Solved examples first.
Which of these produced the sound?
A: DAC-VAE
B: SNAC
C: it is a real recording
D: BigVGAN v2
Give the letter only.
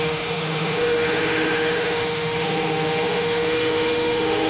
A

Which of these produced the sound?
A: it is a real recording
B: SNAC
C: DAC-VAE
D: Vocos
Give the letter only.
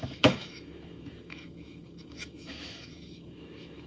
C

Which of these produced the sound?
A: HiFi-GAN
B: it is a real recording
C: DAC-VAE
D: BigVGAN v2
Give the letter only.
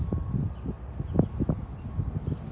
B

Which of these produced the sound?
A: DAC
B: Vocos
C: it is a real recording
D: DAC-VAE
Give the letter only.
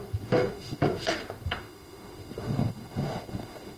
D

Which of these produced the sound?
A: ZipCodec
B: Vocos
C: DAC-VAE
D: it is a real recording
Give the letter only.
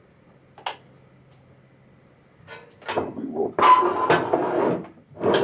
D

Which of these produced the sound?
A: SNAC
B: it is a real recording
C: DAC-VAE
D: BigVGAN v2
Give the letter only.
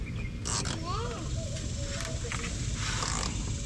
B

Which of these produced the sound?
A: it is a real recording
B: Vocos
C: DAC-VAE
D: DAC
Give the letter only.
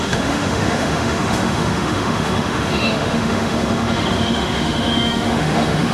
C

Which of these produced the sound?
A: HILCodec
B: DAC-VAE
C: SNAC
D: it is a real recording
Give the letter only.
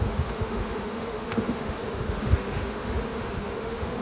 B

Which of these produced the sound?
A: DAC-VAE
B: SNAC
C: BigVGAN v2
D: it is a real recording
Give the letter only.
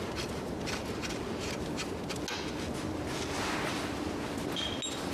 D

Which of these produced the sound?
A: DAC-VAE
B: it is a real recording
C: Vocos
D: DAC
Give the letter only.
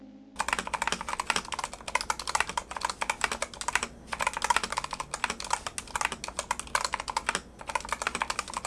B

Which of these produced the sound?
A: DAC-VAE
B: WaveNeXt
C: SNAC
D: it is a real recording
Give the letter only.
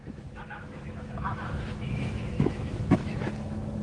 A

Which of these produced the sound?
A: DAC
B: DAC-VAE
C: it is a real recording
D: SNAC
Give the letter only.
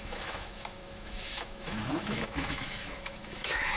B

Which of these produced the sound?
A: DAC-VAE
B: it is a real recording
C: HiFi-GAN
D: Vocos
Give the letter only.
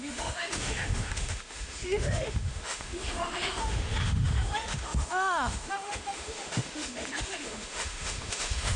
A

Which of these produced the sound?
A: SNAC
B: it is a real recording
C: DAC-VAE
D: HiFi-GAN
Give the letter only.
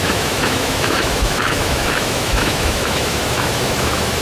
C